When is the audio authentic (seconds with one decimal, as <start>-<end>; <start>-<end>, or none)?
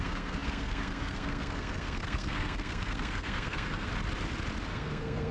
3.9-4.7